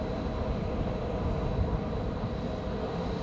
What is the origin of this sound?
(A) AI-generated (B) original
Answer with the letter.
B